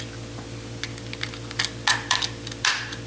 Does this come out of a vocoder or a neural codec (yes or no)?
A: no